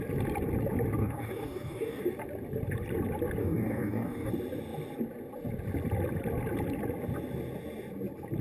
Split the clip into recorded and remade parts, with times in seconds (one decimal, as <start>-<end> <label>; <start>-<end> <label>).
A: 0.0-1.0 recorded; 1.0-2.0 remade; 2.0-3.4 recorded; 3.4-4.3 remade; 4.3-8.4 recorded